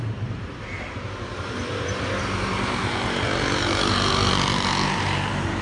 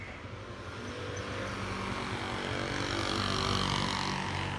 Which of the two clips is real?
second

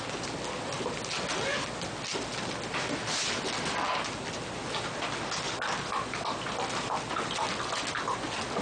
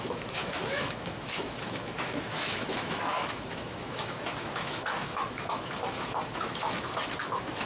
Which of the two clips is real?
first